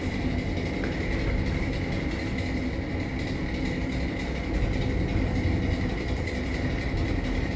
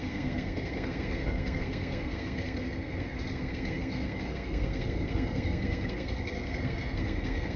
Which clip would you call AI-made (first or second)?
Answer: second